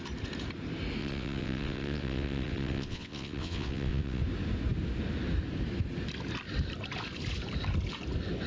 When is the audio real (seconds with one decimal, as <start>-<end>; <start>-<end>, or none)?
0.0-1.0; 4.2-8.5